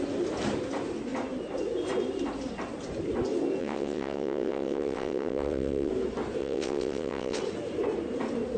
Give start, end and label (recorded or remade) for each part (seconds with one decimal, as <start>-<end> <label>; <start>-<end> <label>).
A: 0.0-3.6 recorded; 3.6-5.9 remade; 5.9-6.4 recorded; 6.4-7.4 remade; 7.4-8.6 recorded